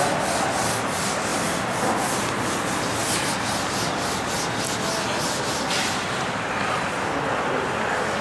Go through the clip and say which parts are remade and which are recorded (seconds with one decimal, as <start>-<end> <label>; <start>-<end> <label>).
0.0-8.2 recorded